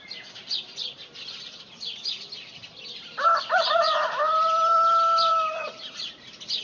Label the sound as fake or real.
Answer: fake